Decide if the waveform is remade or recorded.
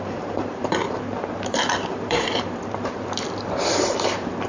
remade